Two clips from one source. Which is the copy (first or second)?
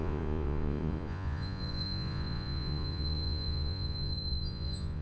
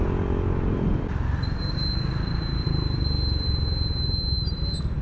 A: first